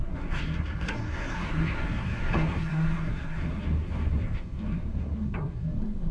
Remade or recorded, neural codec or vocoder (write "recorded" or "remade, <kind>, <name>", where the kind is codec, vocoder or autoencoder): remade, codec, SNAC